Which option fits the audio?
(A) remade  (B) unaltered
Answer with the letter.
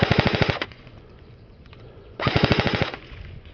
A